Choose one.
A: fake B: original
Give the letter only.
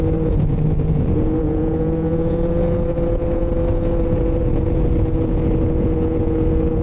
A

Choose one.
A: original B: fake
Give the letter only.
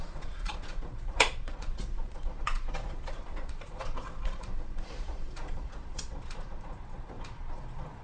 B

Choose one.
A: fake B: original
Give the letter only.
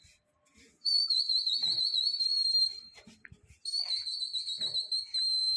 B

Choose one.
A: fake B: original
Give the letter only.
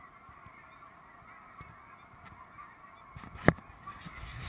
B